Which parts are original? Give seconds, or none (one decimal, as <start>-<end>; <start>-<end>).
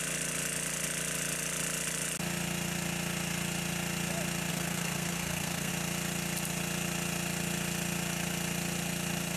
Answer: 0.0-4.5; 5.7-9.4